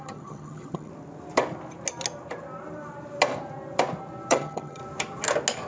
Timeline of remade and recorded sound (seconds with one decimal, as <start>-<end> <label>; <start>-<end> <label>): 0.0-0.9 remade; 0.9-4.3 recorded; 4.3-4.8 remade; 4.8-5.7 recorded